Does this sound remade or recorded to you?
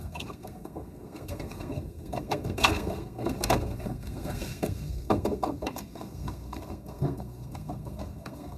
remade